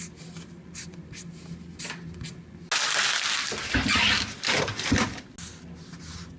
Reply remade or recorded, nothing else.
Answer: recorded